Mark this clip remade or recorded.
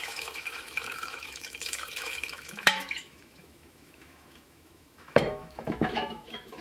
remade